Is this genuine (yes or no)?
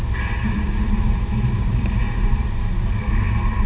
no